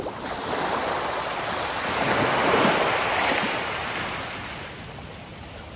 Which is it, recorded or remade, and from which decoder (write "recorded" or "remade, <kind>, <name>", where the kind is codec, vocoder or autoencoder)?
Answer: recorded